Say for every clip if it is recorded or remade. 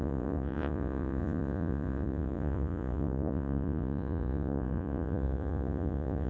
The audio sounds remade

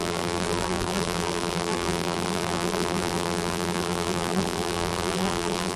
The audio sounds remade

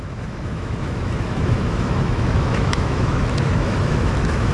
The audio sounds remade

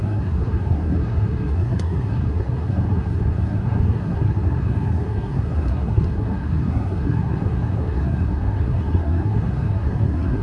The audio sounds remade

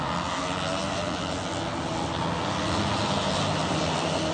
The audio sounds recorded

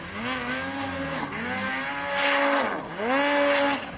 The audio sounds recorded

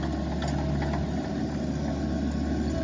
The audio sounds recorded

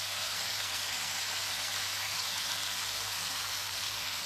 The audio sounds remade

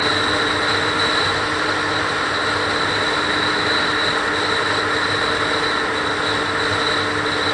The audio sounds recorded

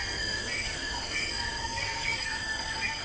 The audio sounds remade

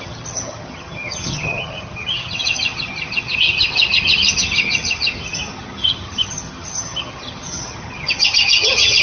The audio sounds remade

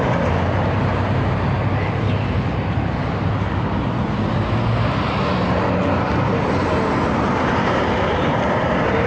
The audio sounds recorded